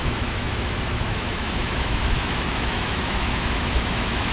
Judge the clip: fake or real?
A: fake